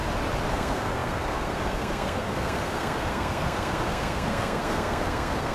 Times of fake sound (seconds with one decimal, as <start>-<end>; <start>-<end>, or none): 0.5-5.5